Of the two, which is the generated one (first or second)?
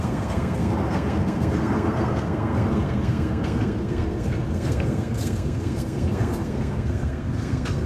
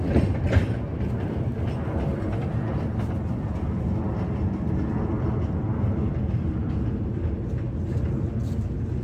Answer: first